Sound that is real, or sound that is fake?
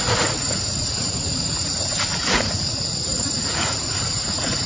fake